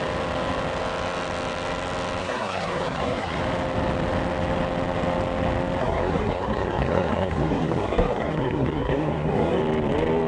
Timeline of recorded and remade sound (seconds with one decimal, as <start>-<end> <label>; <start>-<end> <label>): 0.0-2.2 recorded; 2.2-3.4 remade; 3.4-5.8 recorded; 5.8-9.6 remade; 9.6-10.3 recorded